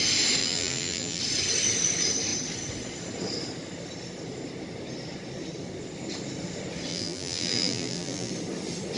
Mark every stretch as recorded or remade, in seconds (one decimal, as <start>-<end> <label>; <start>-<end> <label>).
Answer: 0.0-0.4 recorded; 0.4-1.2 remade; 1.2-6.9 recorded; 6.9-8.3 remade; 8.3-9.0 recorded